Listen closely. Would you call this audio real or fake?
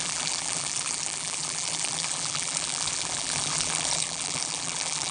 fake